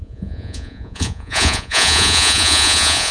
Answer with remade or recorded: remade